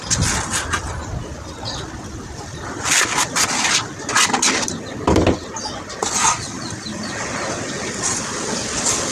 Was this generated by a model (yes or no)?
no